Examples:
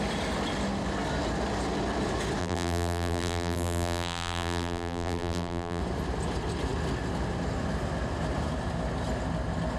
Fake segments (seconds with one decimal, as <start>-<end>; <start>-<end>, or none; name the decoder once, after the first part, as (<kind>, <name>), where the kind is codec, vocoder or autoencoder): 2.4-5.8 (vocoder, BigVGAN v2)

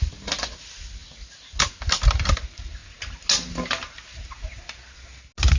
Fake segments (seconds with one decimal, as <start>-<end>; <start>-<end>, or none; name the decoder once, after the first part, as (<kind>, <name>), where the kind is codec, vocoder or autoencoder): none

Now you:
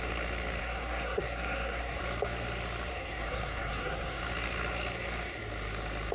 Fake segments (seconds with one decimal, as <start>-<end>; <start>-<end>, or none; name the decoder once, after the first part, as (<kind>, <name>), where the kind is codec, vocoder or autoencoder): 0.6-2.0 (codec, SNAC); 2.9-4.2